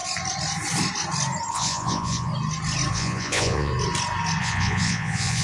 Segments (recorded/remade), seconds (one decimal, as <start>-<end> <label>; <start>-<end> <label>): 0.0-1.5 recorded; 1.5-2.3 remade; 2.3-2.9 recorded; 2.9-3.7 remade; 3.7-4.4 recorded; 4.4-5.4 remade